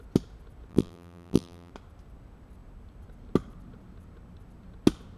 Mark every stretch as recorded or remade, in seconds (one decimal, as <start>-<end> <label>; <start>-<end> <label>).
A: 0.0-0.7 recorded; 0.7-1.7 remade; 1.7-5.2 recorded